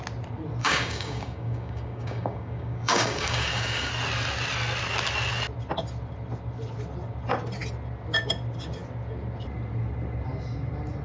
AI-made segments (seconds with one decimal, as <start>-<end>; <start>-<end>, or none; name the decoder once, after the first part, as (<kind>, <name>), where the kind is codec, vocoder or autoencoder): 0.6-3.9 (codec, DAC)